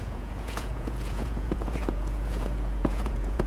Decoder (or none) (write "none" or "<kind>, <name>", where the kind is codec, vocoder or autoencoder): vocoder, Vocos